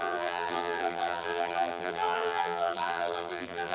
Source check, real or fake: fake